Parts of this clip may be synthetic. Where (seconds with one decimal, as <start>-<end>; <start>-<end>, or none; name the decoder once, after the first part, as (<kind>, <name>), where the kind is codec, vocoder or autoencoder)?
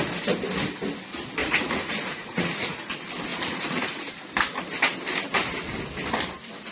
1.4-2.9 (vocoder, Vocos); 3.3-4.1